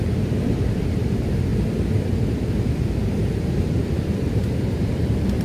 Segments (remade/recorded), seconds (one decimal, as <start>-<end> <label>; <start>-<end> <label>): 0.0-1.5 remade; 1.5-3.3 recorded; 3.3-5.4 remade